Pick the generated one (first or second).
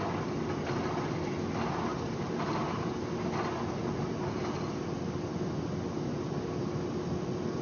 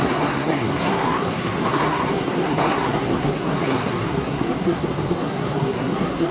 second